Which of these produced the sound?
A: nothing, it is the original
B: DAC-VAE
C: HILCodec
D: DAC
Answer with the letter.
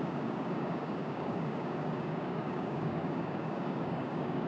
D